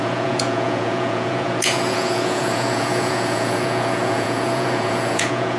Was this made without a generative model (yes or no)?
no